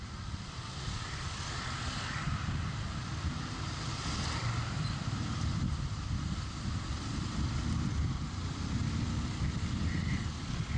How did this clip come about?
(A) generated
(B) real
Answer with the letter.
A